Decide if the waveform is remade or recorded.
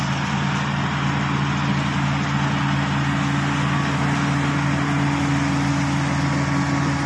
recorded